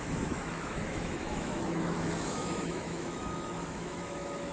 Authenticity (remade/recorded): remade